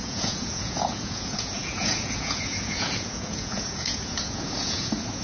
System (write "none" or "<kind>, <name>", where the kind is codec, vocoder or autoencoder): vocoder, Vocos